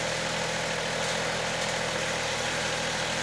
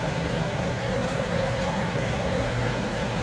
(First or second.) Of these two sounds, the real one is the first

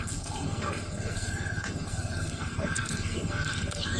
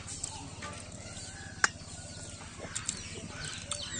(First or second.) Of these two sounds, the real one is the second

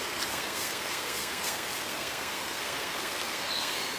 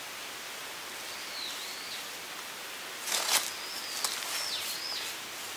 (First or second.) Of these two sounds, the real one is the second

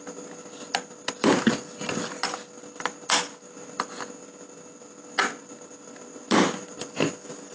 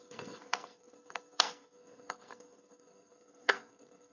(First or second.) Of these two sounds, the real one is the first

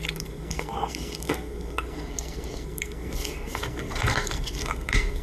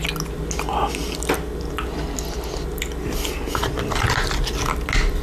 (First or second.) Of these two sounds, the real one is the second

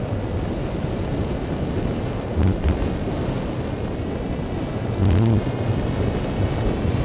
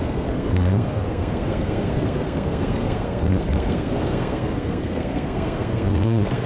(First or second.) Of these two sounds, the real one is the first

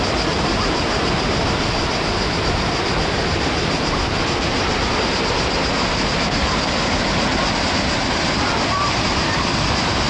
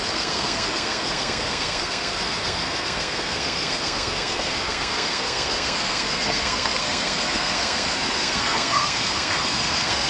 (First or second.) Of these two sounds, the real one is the first